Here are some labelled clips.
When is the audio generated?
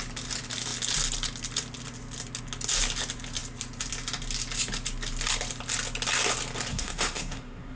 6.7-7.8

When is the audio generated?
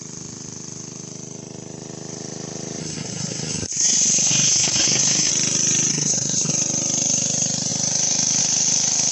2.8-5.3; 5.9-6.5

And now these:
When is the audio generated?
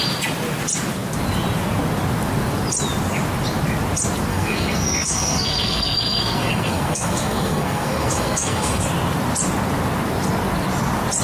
4.3-8.8